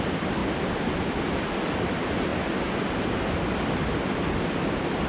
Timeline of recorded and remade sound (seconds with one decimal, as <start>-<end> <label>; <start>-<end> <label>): 0.0-5.1 recorded